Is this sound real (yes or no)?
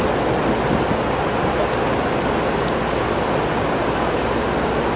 yes